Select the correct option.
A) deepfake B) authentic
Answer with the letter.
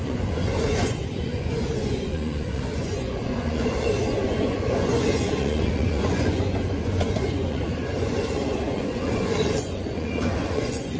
A